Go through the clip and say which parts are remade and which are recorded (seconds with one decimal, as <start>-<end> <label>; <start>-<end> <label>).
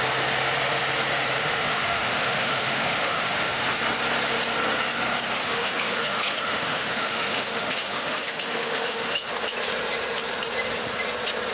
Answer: 0.0-1.4 recorded; 1.4-3.8 remade; 3.8-5.4 recorded; 5.4-9.3 remade; 9.3-11.5 recorded